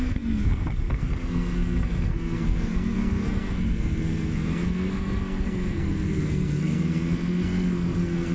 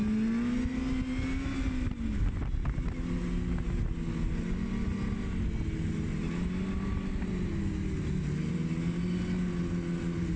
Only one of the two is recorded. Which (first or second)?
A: second